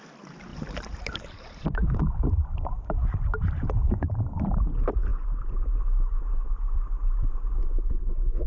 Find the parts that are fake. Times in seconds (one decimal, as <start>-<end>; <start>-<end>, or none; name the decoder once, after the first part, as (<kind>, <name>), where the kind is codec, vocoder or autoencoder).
0.5-2.2 (vocoder, BigVGAN v2); 3.8-4.6